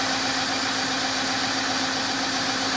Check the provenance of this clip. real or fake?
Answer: real